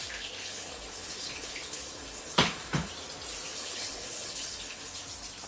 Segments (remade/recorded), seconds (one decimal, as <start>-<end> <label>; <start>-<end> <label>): 0.0-0.4 recorded; 0.4-2.9 remade; 2.9-3.5 recorded; 3.5-5.0 remade; 5.0-5.5 recorded